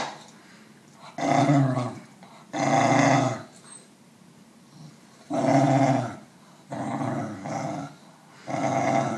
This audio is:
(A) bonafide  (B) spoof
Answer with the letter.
A